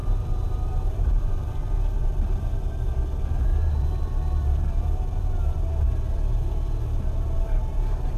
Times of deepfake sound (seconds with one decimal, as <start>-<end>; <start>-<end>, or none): 0.0-1.6; 3.5-5.0